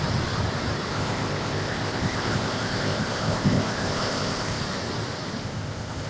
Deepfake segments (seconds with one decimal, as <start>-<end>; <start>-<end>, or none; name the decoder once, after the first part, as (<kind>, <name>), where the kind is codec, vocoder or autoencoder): 0.9-4.6 (codec, ZipCodec); 5.4-6.1